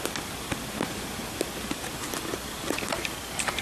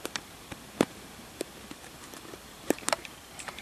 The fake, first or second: second